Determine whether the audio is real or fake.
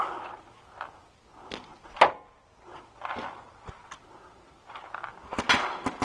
real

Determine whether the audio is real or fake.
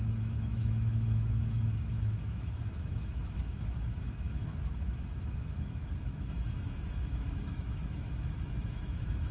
fake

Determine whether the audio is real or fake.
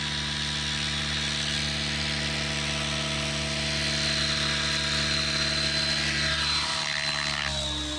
real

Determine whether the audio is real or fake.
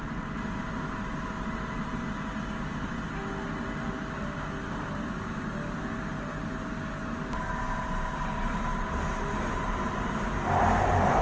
real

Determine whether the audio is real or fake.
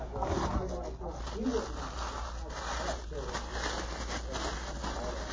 real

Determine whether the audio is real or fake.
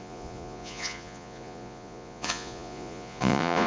fake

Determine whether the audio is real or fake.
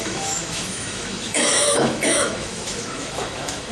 fake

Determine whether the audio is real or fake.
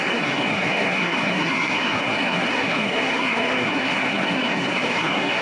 fake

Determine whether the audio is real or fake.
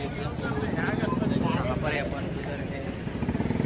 real